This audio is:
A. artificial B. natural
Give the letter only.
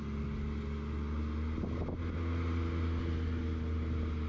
B